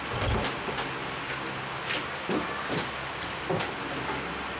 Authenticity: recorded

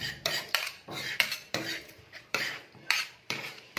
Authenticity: remade